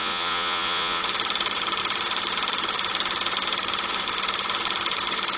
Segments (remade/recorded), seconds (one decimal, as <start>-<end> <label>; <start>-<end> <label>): 0.0-1.0 remade; 1.0-5.4 recorded